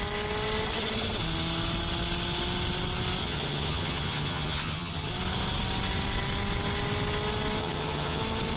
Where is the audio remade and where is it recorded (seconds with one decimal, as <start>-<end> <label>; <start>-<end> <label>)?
0.0-3.2 recorded; 3.2-5.1 remade; 5.1-7.6 recorded; 7.6-8.2 remade; 8.2-8.6 recorded